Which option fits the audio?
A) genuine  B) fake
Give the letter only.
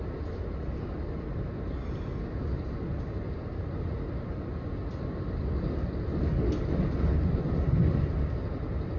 A